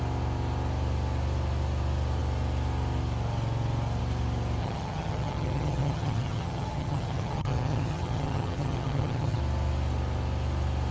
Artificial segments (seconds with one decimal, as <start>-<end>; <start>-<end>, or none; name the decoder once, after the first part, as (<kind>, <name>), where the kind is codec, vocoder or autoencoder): 4.6-9.4 (vocoder, HiFi-GAN)